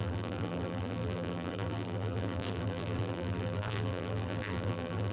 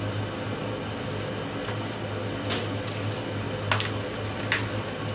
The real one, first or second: second